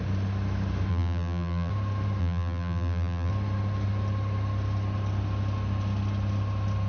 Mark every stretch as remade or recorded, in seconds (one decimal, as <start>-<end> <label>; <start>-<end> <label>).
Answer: 0.0-0.9 recorded; 0.9-1.7 remade; 1.7-2.2 recorded; 2.2-3.3 remade; 3.3-6.9 recorded